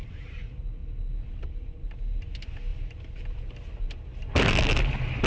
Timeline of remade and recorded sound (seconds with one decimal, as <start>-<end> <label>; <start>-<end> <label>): 0.0-5.3 recorded